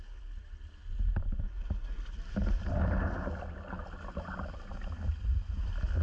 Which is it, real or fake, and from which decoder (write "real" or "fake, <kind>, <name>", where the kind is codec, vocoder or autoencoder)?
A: real